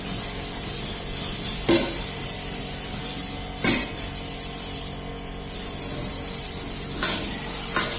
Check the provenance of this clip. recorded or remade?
recorded